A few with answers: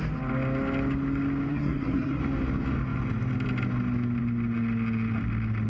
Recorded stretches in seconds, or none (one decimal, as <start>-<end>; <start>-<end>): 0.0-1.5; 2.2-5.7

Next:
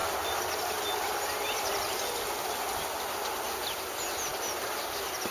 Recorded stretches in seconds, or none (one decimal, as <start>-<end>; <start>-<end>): 2.6-5.3

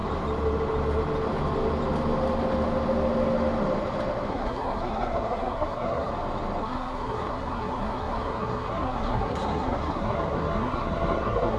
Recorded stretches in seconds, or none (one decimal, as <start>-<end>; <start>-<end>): 0.0-4.3; 6.1-6.6

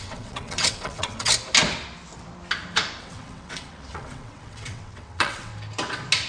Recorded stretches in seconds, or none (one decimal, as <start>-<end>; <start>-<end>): 1.3-3.0; 5.5-6.3

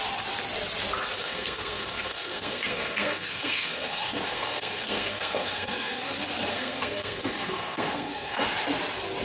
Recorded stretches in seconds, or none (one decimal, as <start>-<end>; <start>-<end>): 0.0-1.2; 6.1-6.5; 8.4-9.2

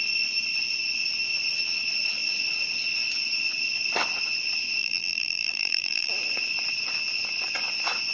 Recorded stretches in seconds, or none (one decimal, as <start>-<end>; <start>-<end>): 0.0-4.8; 6.1-8.1